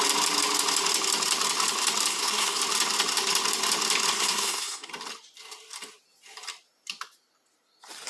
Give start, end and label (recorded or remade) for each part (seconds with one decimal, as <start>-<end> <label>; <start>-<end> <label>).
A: 0.0-2.1 recorded; 2.1-2.6 remade; 2.6-4.1 recorded; 4.1-4.9 remade; 4.9-8.1 recorded